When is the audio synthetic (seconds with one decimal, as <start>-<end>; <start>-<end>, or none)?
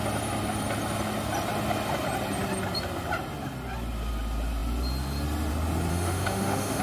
5.9-6.8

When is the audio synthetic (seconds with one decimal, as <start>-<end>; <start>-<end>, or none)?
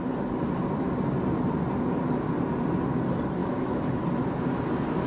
3.4-4.0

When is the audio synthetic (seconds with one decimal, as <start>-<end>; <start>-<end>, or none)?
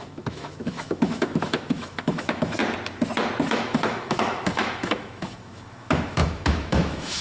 0.0-2.6; 3.5-7.2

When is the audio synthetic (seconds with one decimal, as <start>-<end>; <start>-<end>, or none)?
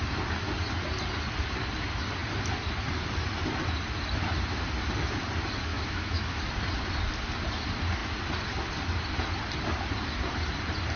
5.7-6.4